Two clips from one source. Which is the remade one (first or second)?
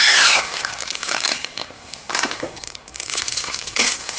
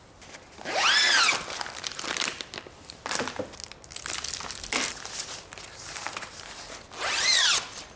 first